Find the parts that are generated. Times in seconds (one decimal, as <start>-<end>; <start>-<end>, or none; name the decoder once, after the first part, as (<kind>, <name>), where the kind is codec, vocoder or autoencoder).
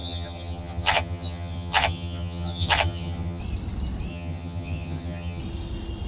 0.0-3.4 (vocoder, HiFi-GAN); 4.1-5.4